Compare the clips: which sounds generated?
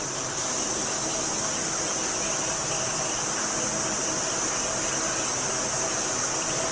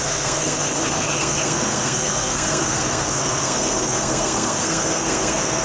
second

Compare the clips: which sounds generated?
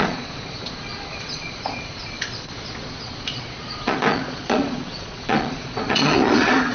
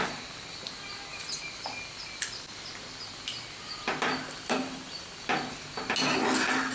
first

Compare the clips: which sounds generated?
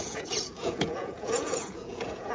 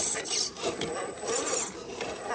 first